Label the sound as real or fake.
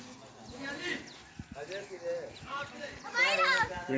real